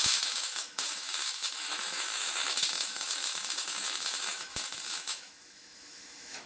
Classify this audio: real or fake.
fake